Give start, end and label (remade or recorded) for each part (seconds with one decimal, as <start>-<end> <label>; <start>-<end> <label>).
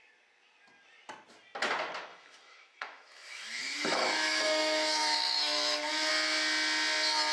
0.0-2.1 recorded; 2.1-6.1 remade; 6.1-7.3 recorded